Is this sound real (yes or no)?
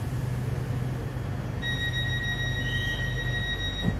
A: yes